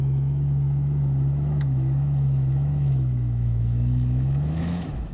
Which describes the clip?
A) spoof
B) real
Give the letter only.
A